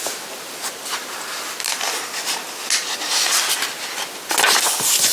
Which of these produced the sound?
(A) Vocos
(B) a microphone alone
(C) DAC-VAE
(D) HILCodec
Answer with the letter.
B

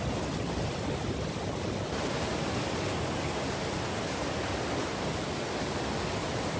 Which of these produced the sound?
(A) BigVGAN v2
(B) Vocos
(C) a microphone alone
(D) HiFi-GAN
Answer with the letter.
C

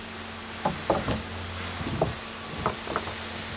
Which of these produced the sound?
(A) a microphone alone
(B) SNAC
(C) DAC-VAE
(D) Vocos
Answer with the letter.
A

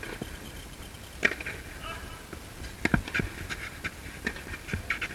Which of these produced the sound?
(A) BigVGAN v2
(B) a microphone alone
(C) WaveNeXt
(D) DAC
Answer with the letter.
B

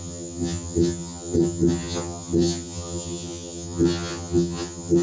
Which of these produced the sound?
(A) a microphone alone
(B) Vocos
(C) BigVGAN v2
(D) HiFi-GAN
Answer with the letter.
D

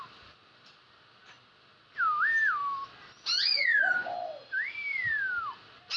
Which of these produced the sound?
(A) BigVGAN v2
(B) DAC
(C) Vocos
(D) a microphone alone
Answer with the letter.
D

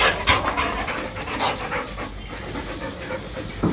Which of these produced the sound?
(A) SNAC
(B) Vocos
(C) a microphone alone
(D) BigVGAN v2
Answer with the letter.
C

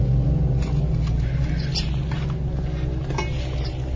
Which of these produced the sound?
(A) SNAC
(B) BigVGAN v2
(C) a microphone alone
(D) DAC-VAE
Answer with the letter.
C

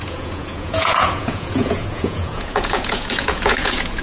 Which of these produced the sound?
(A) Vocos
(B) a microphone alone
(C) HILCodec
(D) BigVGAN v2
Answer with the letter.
A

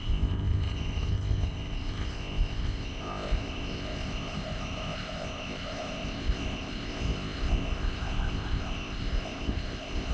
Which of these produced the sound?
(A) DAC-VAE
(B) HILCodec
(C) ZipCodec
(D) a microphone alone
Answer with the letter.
C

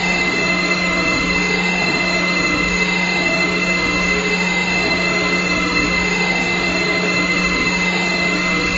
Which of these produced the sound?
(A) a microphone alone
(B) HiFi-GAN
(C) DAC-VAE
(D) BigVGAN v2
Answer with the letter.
C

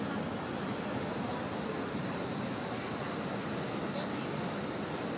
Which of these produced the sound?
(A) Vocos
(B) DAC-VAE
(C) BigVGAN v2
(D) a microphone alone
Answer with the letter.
D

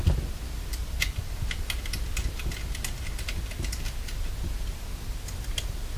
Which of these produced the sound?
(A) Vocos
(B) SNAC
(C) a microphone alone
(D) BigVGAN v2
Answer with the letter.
C